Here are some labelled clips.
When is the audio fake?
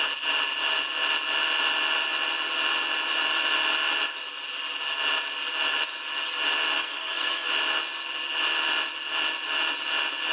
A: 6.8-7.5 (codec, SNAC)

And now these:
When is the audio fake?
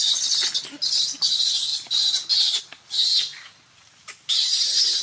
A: none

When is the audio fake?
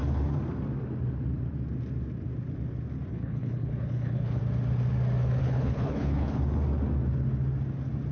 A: 3.1-4.4 (codec, HILCodec); 5.4-6.4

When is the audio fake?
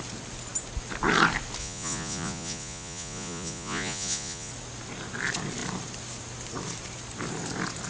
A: 1.6-4.5 (vocoder, Vocos)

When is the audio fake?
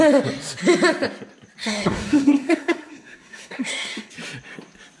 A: 1.6-4.1 (codec, SNAC)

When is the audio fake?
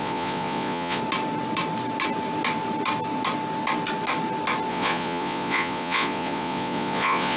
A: 0.0-1.0 (vocoder, Vocos); 4.7-7.4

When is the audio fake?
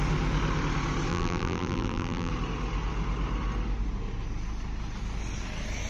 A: 1.1-2.3 (vocoder, BigVGAN v2)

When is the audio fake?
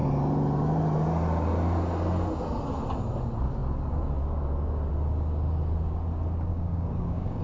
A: 6.5-7.4 (codec, DAC)